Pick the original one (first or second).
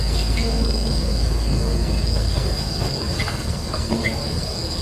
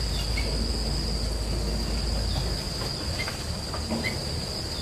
second